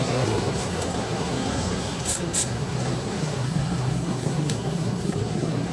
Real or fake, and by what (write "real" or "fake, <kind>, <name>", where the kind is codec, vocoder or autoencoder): fake, codec, SNAC